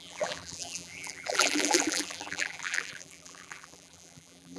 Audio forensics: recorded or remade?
remade